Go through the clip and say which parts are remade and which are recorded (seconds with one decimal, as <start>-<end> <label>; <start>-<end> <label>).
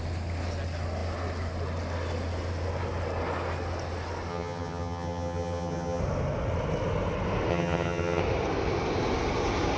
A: 0.0-4.3 recorded; 4.3-6.0 remade; 6.0-7.5 recorded; 7.5-8.2 remade; 8.2-9.8 recorded